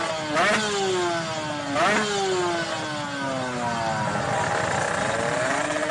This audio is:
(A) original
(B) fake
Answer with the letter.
A